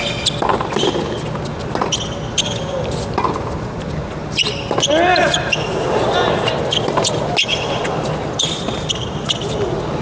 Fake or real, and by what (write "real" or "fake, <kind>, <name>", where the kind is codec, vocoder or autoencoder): real